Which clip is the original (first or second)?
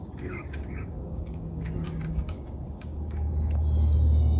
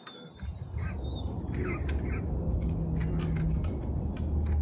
second